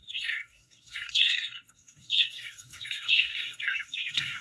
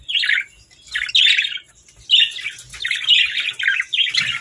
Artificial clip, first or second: first